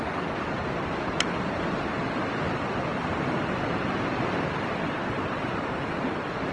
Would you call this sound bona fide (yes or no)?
no